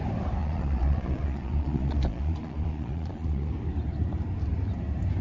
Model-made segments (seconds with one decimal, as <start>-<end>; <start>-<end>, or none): 0.4-3.5